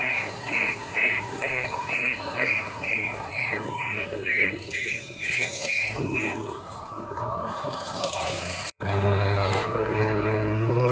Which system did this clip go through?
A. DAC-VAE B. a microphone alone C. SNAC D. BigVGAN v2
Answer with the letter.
C